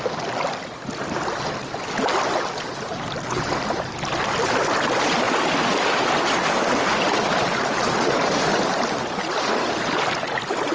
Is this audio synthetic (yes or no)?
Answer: no